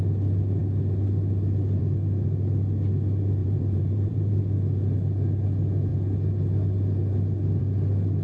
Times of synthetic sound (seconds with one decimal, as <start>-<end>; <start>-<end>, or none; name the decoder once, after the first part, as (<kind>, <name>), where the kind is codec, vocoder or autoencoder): 3.4-4.4 (vocoder, BigVGAN v2)